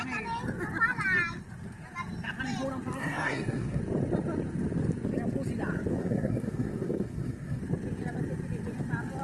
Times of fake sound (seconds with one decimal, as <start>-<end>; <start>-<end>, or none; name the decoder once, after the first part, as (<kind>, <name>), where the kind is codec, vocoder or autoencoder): 3.0-3.8 (codec, SNAC); 6.0-7.6